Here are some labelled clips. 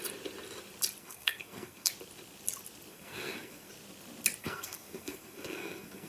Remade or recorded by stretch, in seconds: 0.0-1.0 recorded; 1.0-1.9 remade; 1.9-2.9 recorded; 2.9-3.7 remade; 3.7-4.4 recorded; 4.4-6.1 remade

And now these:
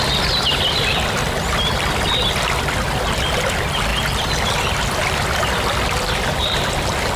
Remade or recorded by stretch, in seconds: 0.0-7.2 recorded

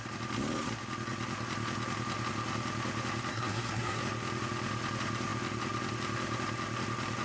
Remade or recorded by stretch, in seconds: 0.0-3.3 recorded; 3.3-4.0 remade; 4.0-7.2 recorded

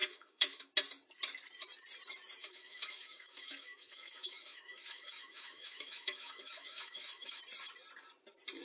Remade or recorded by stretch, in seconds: 0.0-0.7 remade; 0.7-2.4 recorded; 2.4-7.4 remade; 7.4-8.6 recorded

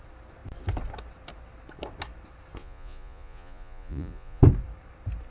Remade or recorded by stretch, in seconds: 0.0-2.6 recorded; 2.6-4.4 remade; 4.4-5.3 recorded